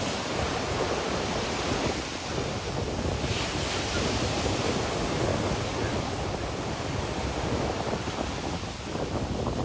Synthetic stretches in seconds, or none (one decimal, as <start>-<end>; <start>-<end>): none